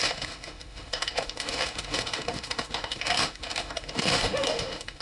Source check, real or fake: fake